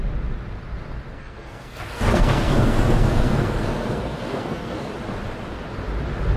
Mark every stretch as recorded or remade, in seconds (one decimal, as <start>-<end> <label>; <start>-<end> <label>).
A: 0.0-1.1 recorded; 1.1-4.9 remade; 4.9-6.4 recorded